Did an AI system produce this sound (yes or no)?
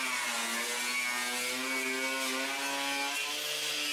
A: no